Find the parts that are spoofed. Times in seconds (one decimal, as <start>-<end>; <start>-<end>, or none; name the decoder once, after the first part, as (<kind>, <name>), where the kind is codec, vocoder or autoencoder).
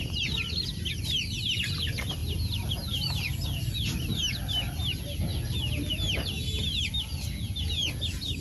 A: none